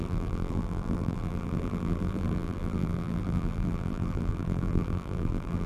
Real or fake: fake